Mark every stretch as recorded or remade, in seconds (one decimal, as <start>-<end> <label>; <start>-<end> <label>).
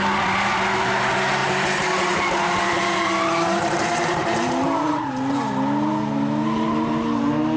0.0-1.4 recorded; 1.4-5.1 remade; 5.1-7.6 recorded